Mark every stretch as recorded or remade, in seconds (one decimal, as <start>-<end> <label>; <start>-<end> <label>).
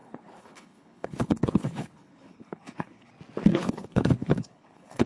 0.0-3.1 remade; 3.1-3.5 recorded; 3.5-5.1 remade